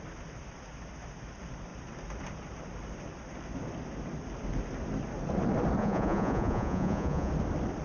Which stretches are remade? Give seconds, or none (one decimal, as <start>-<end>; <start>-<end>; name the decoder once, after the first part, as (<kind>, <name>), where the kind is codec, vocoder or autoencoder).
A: 5.8-7.3 (vocoder, Vocos)